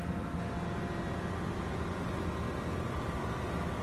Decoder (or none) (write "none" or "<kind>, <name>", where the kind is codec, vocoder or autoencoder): none